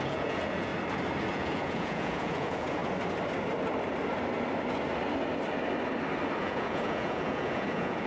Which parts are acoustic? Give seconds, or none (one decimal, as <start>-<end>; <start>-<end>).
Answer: 0.7-1.3; 2.8-6.4